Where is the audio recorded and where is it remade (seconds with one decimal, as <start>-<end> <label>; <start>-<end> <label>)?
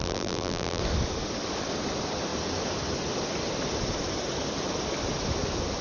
0.0-0.8 remade; 0.8-5.8 recorded